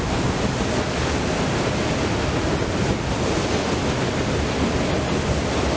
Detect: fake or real real